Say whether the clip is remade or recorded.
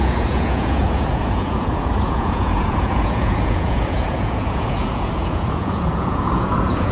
remade